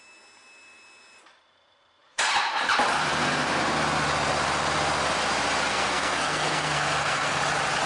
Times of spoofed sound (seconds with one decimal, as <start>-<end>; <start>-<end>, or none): 5.7-7.4